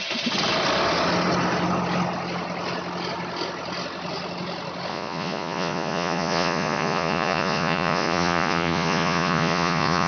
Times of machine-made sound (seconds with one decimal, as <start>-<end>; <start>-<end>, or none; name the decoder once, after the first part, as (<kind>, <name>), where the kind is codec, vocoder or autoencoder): 4.9-10.1 (vocoder, Vocos)